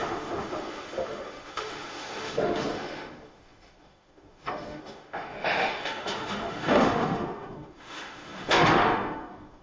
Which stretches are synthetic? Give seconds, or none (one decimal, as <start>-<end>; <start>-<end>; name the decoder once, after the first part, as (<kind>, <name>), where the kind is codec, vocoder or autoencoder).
0.0-9.6 (autoencoder, DAC-VAE)